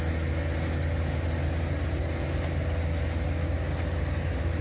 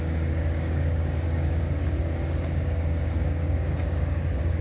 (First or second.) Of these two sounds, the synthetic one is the second